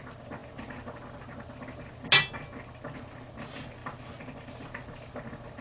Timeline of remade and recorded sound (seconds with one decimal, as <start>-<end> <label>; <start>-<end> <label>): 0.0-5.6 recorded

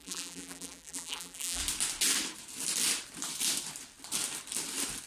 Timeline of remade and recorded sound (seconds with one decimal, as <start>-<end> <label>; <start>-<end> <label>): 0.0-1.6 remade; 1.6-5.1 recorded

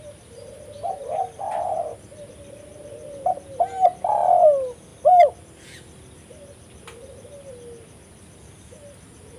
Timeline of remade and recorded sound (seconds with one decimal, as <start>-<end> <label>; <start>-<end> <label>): 0.0-9.4 recorded

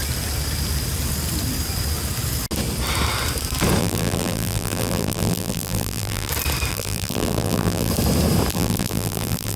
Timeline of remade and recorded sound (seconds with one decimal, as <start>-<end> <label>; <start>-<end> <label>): 0.0-3.8 recorded; 3.8-6.3 remade; 6.3-6.7 recorded; 6.7-7.9 remade; 7.9-8.5 recorded; 8.5-9.6 remade

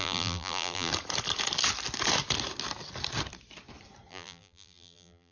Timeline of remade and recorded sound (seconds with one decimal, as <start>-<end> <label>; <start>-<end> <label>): 0.0-0.9 remade; 0.9-4.1 recorded; 4.1-5.3 remade

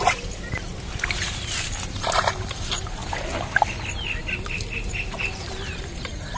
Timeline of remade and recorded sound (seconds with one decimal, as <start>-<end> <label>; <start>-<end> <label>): 0.0-3.0 remade; 3.0-4.9 recorded; 4.9-6.4 remade

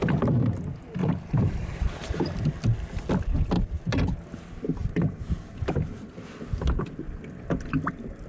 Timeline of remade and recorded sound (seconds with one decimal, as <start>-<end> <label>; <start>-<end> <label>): 0.0-1.0 recorded; 1.0-2.2 remade; 2.2-4.8 recorded; 4.8-5.5 remade; 5.5-8.3 recorded